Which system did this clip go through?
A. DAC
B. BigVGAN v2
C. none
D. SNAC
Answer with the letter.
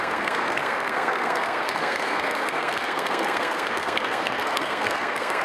D